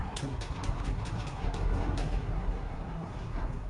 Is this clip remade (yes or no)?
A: yes